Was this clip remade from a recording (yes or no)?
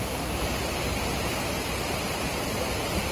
yes